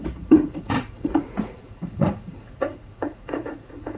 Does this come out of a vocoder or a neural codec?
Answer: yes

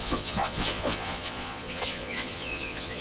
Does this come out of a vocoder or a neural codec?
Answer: yes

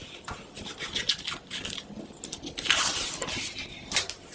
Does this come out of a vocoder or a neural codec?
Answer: no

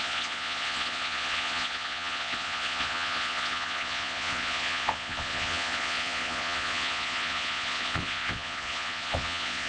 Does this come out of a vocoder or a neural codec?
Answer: yes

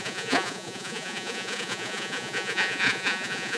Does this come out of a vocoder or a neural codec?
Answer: yes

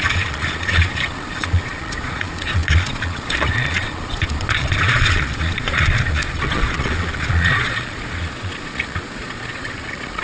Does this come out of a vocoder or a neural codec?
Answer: yes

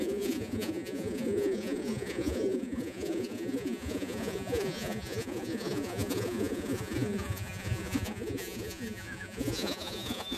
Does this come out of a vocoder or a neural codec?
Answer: yes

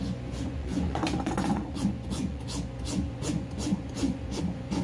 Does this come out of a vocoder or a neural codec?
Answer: yes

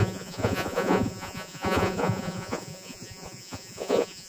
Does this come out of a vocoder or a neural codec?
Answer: yes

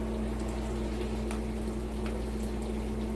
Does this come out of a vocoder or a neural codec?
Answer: no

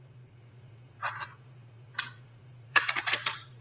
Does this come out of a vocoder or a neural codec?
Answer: yes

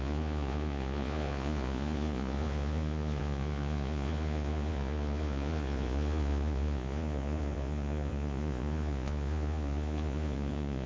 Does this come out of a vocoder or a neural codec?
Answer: yes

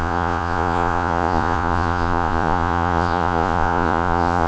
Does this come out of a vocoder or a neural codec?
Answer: yes